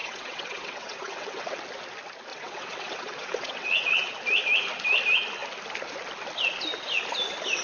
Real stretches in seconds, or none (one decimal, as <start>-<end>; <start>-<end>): 1.6-2.3; 4.1-7.6